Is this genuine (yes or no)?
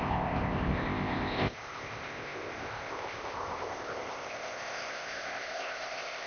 no